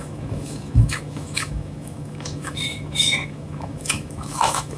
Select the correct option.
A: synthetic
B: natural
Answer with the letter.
A